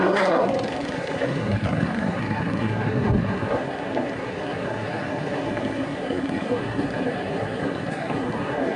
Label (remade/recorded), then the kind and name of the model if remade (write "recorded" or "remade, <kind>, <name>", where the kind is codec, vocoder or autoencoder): remade, codec, SNAC